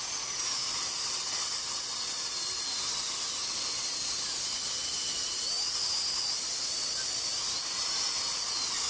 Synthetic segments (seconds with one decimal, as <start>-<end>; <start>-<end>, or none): none